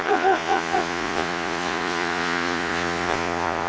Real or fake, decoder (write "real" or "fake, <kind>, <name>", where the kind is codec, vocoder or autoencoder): fake, vocoder, Vocos